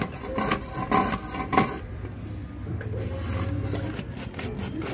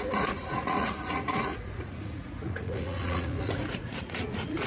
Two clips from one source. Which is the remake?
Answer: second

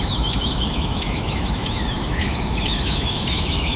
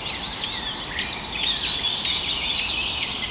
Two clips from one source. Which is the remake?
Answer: first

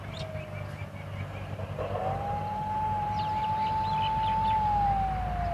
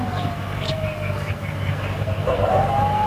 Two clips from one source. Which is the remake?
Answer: second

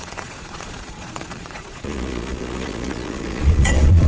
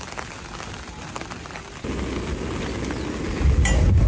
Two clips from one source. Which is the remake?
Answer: first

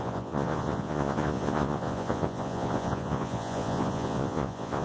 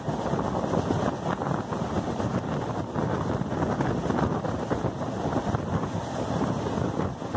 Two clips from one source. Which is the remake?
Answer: first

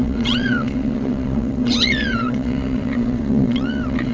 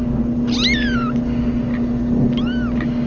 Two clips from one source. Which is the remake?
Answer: first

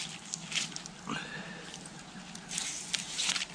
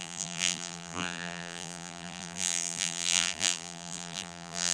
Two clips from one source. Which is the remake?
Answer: second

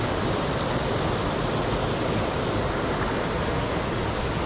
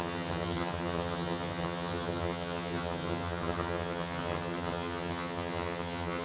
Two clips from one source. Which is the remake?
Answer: second